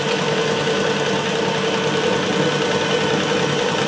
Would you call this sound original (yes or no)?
yes